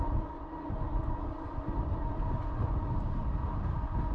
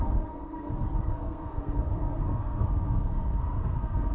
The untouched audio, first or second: first